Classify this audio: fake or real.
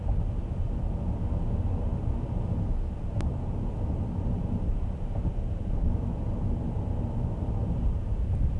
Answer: real